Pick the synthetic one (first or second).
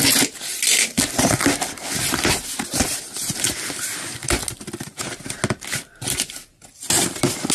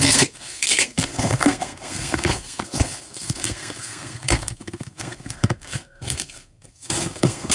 second